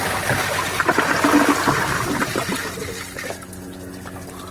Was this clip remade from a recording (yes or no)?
no